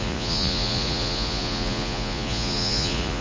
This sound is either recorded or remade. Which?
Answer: remade